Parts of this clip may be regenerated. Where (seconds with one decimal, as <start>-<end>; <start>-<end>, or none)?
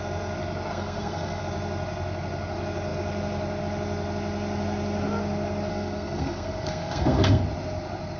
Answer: 0.7-1.4; 5.7-7.4